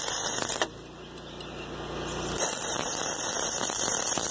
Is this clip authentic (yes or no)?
no